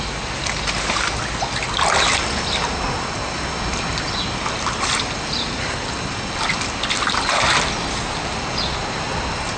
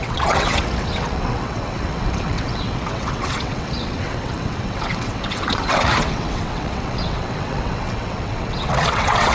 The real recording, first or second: first